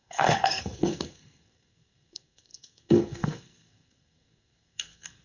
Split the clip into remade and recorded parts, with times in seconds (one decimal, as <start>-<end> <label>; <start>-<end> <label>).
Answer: 0.0-5.2 remade